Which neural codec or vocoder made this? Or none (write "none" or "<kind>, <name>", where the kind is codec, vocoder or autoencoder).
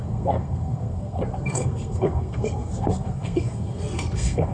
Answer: codec, SNAC